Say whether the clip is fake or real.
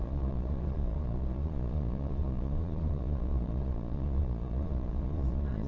fake